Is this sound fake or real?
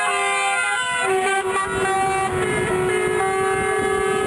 real